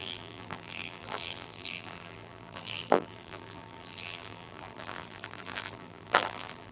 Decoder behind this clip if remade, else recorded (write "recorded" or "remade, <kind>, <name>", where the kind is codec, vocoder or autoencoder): remade, vocoder, BigVGAN v2